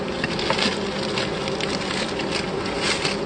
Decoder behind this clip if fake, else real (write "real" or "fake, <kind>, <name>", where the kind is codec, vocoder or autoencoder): real